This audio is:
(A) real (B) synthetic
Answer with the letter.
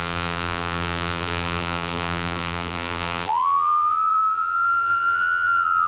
B